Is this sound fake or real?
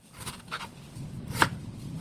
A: real